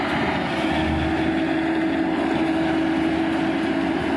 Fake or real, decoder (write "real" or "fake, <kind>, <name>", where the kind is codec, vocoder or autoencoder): real